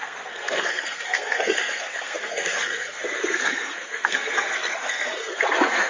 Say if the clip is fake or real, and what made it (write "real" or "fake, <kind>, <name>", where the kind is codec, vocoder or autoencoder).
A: fake, codec, SNAC